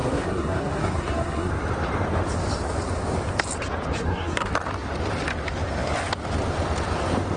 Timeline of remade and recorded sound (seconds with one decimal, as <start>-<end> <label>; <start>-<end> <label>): 0.0-1.5 remade; 1.5-4.0 recorded; 4.0-4.5 remade; 4.5-7.4 recorded